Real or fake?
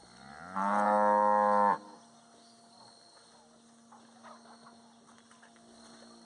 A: real